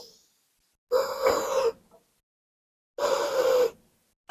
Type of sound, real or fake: real